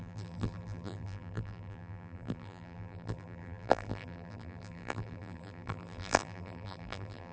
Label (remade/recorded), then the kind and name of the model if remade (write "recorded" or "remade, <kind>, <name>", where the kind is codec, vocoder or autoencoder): remade, vocoder, BigVGAN v2